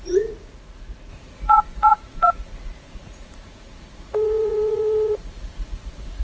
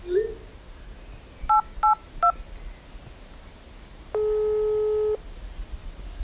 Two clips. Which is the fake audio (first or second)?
first